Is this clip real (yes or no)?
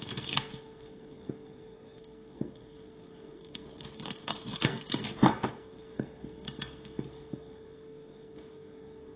no